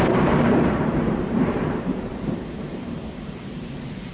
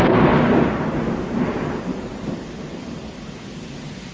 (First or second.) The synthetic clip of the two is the first